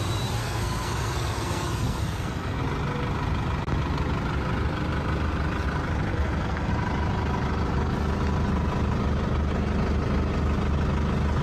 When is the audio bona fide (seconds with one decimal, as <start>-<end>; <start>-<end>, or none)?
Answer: 0.0-0.4; 2.6-6.1; 6.7-11.4